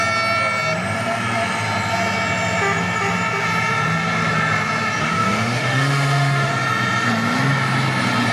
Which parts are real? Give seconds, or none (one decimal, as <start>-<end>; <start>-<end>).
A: 0.0-5.0; 6.5-8.3